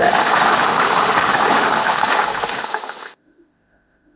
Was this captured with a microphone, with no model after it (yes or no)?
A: no